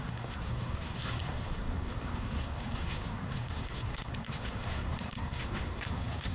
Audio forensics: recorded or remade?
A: remade